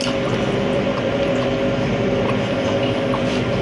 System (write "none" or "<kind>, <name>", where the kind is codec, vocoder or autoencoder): vocoder, BigVGAN v2